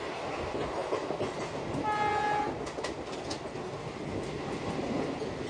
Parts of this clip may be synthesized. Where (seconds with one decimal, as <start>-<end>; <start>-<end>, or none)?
none